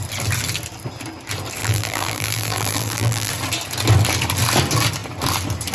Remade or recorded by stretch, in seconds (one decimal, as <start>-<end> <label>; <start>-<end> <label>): 0.0-1.6 recorded; 1.6-3.3 remade; 3.3-5.7 recorded